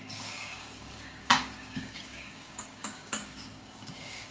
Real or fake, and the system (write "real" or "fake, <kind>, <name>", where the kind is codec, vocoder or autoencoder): fake, codec, DAC